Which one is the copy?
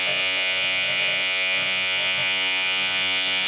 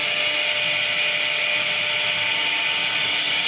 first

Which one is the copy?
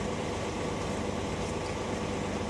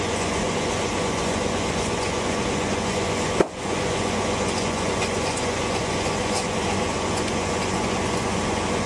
second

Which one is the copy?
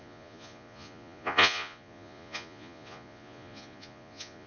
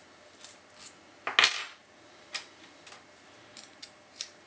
first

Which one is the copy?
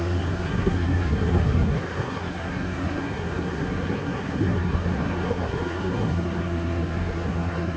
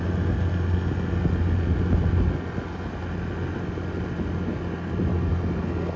first